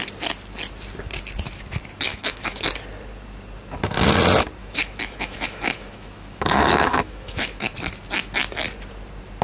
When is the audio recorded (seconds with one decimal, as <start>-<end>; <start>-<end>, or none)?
0.0-2.1; 2.6-4.6; 7.7-9.4